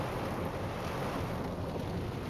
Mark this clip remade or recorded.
recorded